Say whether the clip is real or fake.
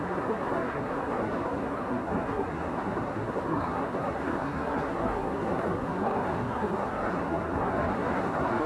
fake